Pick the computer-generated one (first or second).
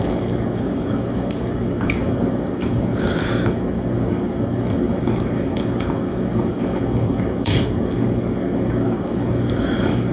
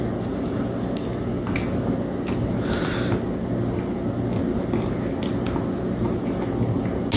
first